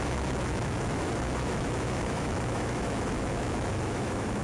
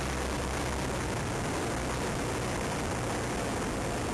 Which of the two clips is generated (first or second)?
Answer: first